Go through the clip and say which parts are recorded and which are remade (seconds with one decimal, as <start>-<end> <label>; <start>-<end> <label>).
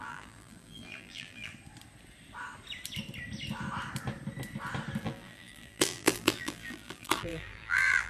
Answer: 0.0-1.5 remade; 1.5-5.0 recorded; 5.0-8.1 remade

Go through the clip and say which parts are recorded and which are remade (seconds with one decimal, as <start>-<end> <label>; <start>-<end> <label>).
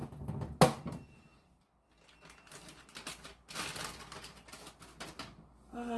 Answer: 0.0-6.0 recorded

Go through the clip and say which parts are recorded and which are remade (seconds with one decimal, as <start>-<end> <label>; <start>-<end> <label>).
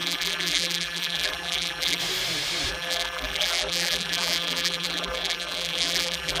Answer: 0.0-2.0 remade; 2.0-2.7 recorded; 2.7-6.4 remade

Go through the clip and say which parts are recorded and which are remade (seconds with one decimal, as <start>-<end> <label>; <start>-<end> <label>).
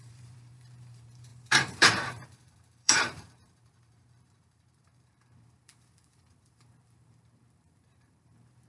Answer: 0.0-8.7 remade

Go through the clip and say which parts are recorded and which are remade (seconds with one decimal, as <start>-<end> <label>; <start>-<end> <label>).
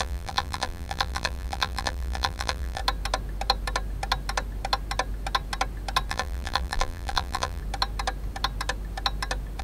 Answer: 0.0-2.8 remade; 2.8-6.1 recorded; 6.1-7.6 remade; 7.6-9.6 recorded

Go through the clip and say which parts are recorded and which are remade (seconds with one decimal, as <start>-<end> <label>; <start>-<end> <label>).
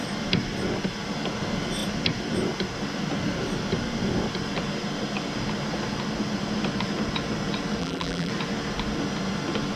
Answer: 0.0-7.8 recorded; 7.8-8.3 remade; 8.3-9.8 recorded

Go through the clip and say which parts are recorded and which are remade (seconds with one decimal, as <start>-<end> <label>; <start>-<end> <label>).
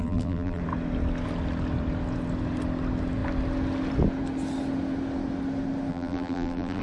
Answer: 0.0-0.6 remade; 0.6-5.9 recorded; 5.9-6.8 remade